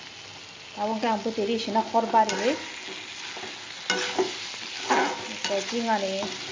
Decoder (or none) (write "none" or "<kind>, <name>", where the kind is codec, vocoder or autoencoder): none